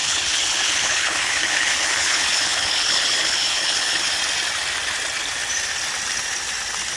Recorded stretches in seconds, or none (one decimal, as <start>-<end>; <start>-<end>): 4.1-7.0